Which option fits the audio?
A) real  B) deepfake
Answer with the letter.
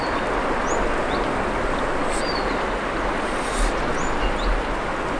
A